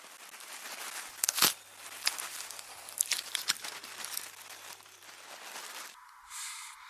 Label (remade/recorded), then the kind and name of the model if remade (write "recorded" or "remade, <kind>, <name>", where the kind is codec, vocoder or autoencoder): recorded